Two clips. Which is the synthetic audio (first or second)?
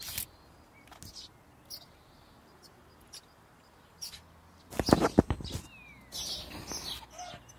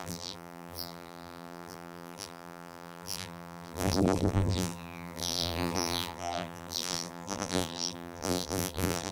second